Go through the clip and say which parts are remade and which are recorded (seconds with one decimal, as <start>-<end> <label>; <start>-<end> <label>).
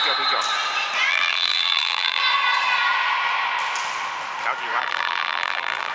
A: 0.0-1.1 recorded; 1.1-2.2 remade; 2.2-4.8 recorded; 4.8-5.9 remade